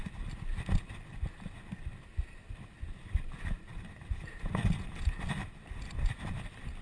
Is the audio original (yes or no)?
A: yes